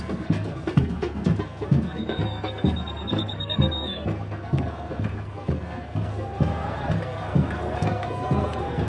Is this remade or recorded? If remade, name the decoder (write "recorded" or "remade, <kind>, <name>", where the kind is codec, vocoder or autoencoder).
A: remade, codec, SNAC